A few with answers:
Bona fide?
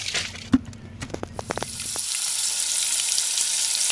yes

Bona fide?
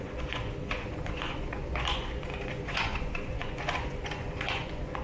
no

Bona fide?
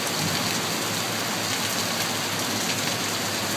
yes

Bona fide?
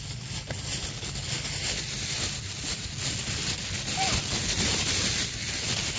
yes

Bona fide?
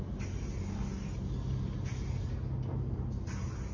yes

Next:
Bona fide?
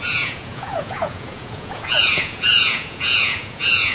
no